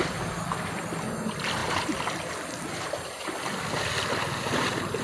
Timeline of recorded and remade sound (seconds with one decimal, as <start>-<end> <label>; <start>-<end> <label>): 0.0-5.0 recorded